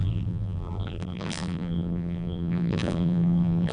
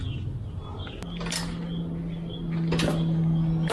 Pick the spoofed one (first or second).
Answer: first